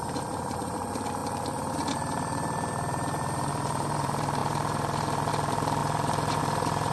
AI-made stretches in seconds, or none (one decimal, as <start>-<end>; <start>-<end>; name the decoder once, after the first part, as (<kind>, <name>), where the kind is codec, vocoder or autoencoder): 0.0-6.9 (vocoder, BigVGAN v2)